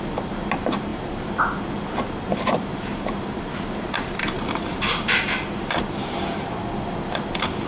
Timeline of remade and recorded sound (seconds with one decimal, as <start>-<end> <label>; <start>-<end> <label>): 0.0-2.3 recorded; 2.3-6.7 remade; 6.7-7.7 recorded